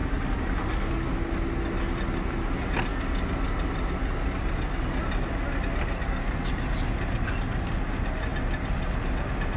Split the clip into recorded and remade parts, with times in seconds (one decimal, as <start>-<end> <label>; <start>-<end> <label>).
0.0-9.6 recorded